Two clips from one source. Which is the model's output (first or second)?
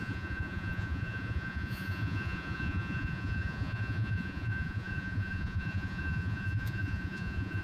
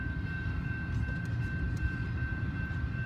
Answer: first